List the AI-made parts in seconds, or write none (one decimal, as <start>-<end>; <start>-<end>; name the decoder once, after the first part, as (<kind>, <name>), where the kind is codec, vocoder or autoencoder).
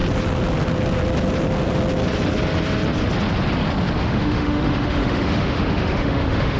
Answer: 4.0-6.6 (autoencoder, DAC-VAE)